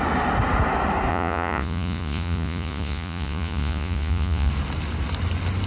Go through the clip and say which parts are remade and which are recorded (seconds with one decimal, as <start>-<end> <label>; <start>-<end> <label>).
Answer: 0.0-1.1 recorded; 1.1-4.5 remade; 4.5-5.7 recorded

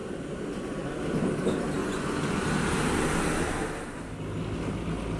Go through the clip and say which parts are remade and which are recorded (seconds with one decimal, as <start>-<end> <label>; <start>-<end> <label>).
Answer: 0.0-1.8 recorded; 1.8-2.4 remade; 2.4-5.2 recorded

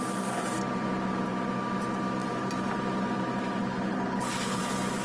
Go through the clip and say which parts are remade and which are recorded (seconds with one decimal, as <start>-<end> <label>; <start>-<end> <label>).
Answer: 0.0-3.6 recorded; 3.6-4.6 remade; 4.6-5.0 recorded

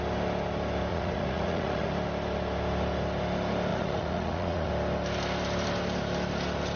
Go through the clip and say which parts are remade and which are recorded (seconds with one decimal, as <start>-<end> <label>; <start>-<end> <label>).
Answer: 0.0-0.9 recorded; 0.9-1.9 remade; 1.9-3.7 recorded; 3.7-4.7 remade; 4.7-6.8 recorded

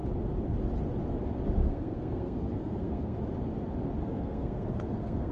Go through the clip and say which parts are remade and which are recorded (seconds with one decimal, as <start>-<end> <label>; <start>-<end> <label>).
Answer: 0.0-1.6 recorded; 1.6-3.2 remade; 3.2-4.0 recorded; 4.0-5.3 remade